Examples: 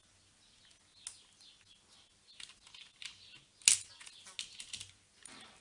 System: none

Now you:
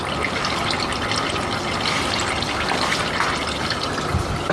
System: none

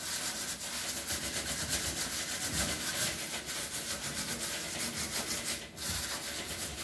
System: none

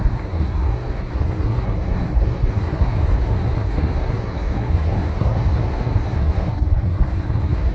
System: codec, SNAC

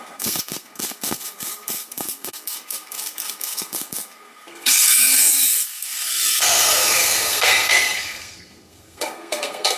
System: codec, SNAC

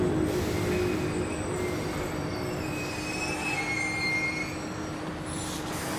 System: none